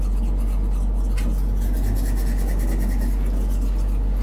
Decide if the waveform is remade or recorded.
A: recorded